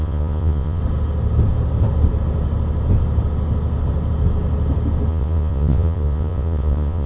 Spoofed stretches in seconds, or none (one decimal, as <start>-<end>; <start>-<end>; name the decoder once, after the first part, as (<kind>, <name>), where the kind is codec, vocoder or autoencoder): 0.0-0.8 (vocoder, Vocos); 5.1-7.1